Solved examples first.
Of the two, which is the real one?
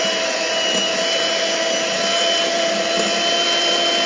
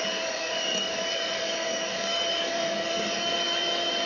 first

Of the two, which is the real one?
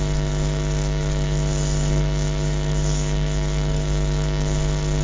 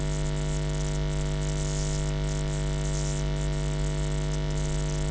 second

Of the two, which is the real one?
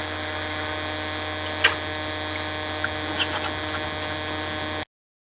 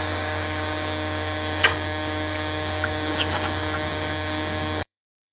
first